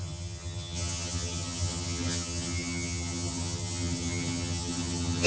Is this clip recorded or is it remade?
remade